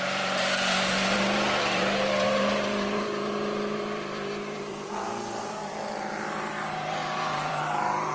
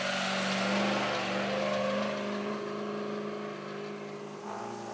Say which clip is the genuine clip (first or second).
second